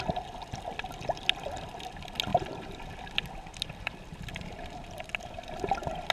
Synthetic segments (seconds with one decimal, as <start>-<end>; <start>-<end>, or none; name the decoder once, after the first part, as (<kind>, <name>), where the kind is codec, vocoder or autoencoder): 2.3-2.8 (vocoder, BigVGAN v2)